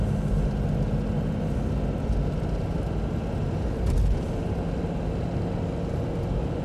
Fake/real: real